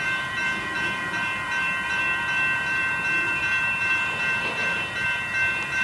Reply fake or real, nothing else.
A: fake